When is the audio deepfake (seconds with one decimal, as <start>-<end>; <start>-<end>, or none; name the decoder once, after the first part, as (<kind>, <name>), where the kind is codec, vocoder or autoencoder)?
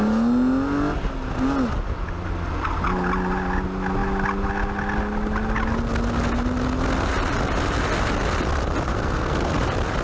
8.9-9.5 (codec, SNAC)